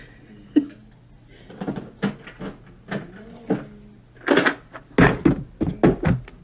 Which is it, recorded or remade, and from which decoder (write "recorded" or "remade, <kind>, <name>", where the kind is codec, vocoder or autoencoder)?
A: recorded